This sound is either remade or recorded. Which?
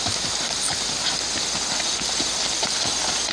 recorded